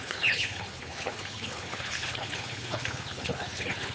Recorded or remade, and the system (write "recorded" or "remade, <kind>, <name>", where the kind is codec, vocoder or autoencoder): remade, codec, HILCodec